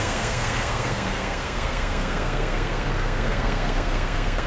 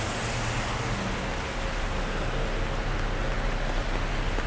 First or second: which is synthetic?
first